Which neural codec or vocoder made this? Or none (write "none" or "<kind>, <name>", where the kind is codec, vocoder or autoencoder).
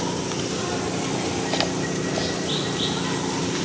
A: none